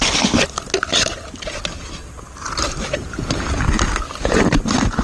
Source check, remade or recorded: recorded